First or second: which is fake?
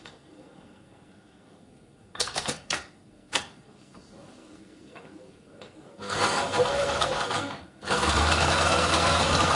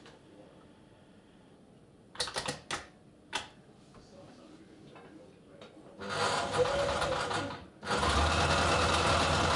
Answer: first